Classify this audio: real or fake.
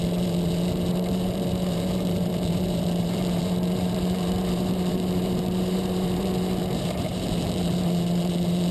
fake